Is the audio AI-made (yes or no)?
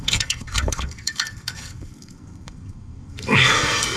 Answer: yes